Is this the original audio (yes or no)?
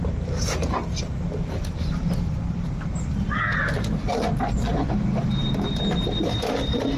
yes